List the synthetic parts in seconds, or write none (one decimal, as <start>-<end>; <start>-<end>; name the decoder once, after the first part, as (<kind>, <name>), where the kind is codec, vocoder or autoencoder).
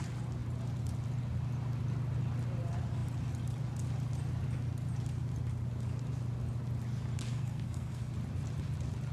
7.3-8.1 (codec, SNAC)